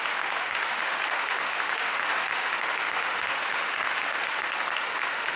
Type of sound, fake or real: fake